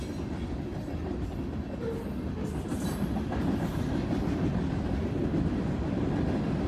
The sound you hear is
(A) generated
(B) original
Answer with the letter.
B